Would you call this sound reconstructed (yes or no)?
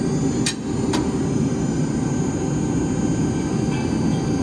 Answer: no